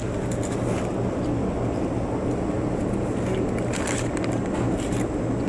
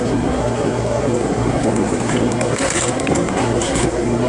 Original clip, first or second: first